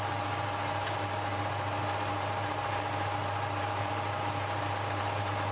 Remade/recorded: recorded